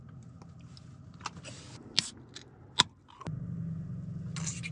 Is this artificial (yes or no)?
no